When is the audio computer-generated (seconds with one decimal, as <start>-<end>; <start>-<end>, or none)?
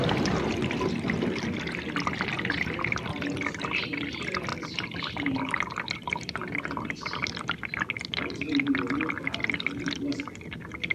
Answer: none